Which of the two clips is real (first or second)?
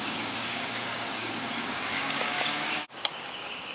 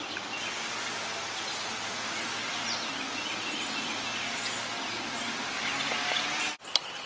second